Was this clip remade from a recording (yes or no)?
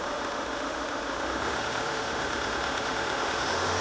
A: yes